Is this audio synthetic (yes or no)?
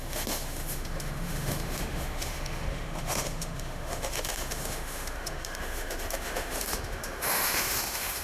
yes